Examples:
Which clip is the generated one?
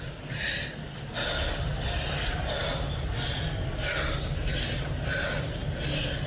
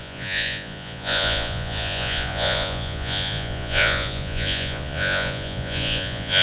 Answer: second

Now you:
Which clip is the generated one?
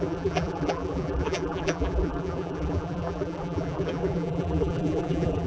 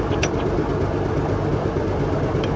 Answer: first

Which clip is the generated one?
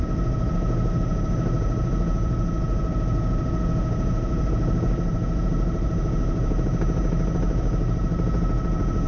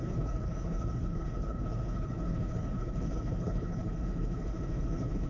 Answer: second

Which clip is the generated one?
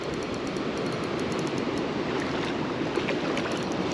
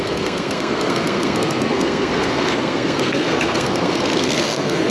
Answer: second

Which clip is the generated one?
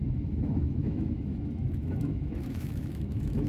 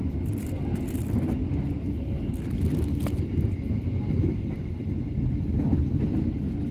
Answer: first